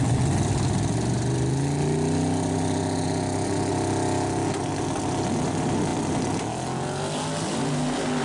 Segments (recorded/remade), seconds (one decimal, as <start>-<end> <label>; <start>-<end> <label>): 0.0-8.2 recorded